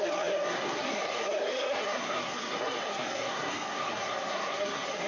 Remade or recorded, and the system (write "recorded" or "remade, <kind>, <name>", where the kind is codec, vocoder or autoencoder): remade, codec, SNAC